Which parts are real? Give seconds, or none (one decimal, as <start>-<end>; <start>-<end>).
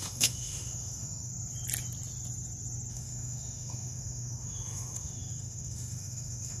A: 1.3-2.9